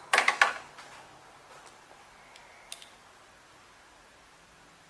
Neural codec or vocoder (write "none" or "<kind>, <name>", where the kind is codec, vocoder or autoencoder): none